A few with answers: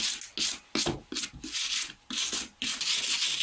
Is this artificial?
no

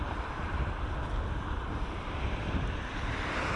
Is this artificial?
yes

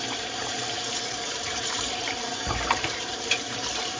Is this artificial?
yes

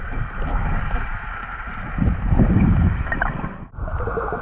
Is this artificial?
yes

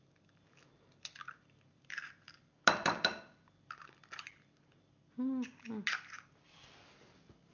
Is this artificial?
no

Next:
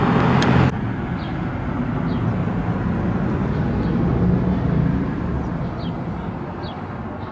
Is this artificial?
no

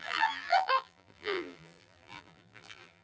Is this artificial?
yes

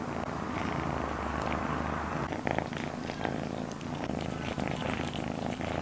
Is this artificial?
yes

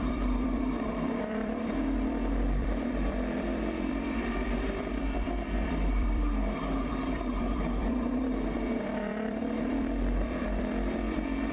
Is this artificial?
yes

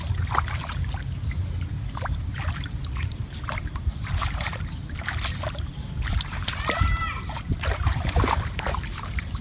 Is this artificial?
yes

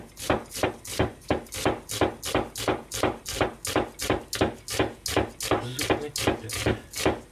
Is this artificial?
no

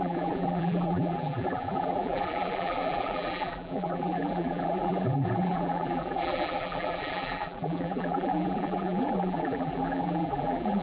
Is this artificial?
yes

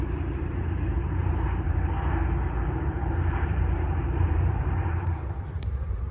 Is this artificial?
yes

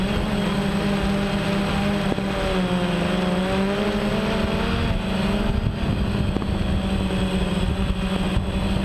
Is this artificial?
no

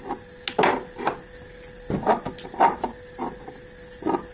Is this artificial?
no